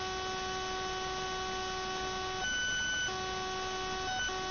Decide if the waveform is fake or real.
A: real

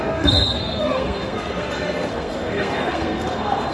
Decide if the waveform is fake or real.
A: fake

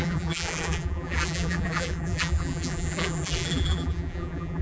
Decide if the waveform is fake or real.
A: fake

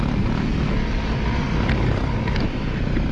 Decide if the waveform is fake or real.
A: real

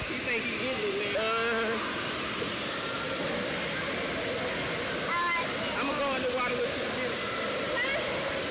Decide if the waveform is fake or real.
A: real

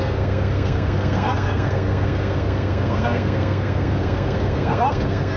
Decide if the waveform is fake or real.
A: fake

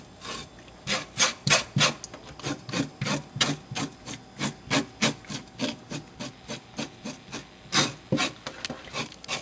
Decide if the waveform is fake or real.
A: real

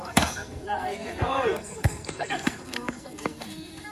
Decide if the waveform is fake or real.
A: fake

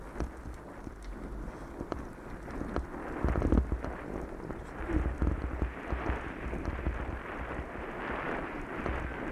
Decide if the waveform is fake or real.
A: real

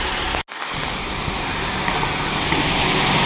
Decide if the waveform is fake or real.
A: real